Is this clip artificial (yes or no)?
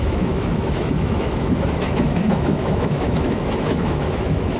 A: yes